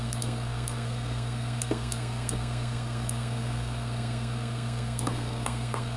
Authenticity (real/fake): fake